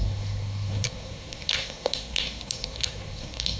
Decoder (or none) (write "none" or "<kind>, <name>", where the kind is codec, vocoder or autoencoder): codec, SNAC